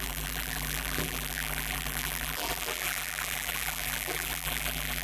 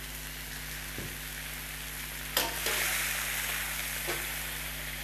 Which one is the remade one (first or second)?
first